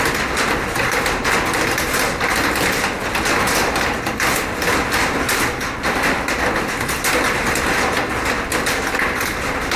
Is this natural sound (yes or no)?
yes